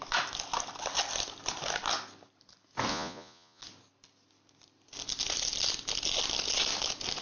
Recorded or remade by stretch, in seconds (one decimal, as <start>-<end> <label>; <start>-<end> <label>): 0.0-2.9 recorded; 2.9-3.6 remade; 3.6-7.2 recorded